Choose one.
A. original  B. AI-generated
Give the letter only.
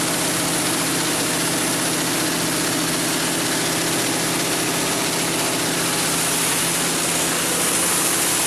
A